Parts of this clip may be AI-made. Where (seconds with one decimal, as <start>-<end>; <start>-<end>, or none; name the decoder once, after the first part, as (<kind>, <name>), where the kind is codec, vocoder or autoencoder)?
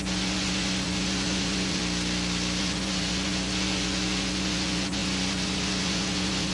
0.0-1.8 (vocoder, Vocos); 2.6-6.5